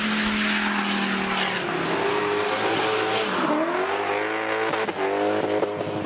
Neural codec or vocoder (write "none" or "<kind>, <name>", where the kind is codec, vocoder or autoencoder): none